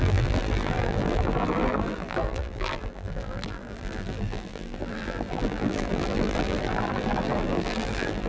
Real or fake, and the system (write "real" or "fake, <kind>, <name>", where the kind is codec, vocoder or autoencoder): fake, vocoder, BigVGAN v2